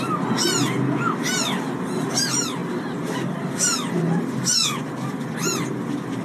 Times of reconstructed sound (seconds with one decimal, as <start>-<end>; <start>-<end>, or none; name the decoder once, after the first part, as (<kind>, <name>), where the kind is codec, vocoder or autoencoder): none